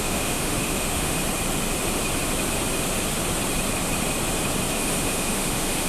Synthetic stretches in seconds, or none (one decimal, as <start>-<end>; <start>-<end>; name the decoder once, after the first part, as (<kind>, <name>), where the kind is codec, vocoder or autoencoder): 0.0-1.2 (autoencoder, DAC-VAE); 4.7-5.9